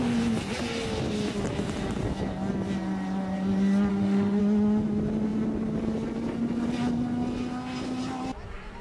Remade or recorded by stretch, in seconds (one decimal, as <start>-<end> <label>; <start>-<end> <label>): 0.0-3.9 recorded; 3.9-4.4 remade; 4.4-8.8 recorded